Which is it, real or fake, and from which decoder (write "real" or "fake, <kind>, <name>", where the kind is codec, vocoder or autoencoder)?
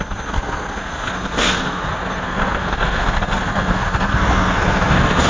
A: fake, codec, SNAC